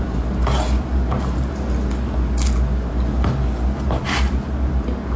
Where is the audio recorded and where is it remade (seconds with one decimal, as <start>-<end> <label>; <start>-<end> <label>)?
0.0-5.2 recorded

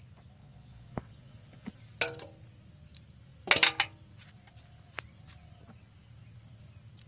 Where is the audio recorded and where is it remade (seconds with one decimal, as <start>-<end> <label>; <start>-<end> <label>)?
0.0-0.4 recorded; 0.4-1.7 remade; 1.7-7.1 recorded

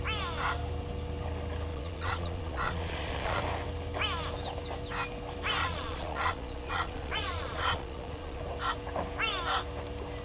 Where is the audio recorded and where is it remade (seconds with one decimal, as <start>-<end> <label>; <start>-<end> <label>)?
0.0-1.7 recorded; 1.7-3.4 remade; 3.4-5.6 recorded; 5.6-8.4 remade; 8.4-10.2 recorded

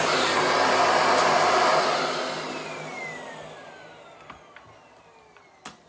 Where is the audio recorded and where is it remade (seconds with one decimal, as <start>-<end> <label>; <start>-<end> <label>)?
0.0-5.9 recorded

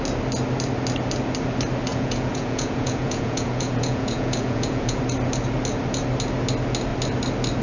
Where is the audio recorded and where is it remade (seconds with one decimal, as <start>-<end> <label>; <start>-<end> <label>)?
0.0-1.9 recorded; 1.9-5.0 remade; 5.0-7.6 recorded

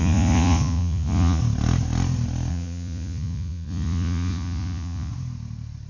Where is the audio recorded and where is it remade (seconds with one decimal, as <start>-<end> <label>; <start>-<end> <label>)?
0.0-1.4 remade; 1.4-2.5 recorded; 2.5-5.1 remade; 5.1-5.9 recorded

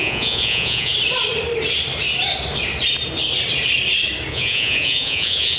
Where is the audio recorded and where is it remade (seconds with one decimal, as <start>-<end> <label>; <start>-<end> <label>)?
0.0-0.9 remade; 0.9-4.3 recorded; 4.3-5.6 remade

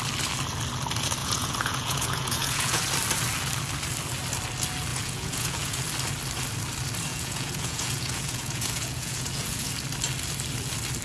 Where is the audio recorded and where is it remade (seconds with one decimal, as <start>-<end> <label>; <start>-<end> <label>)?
0.0-1.2 recorded; 1.2-2.8 remade; 2.8-4.9 recorded; 4.9-5.8 remade; 5.8-7.1 recorded; 7.1-9.7 remade; 9.7-11.0 recorded